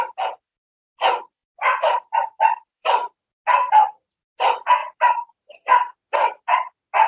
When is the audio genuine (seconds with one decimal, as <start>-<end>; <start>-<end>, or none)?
0.0-2.1; 3.3-4.8; 5.7-7.1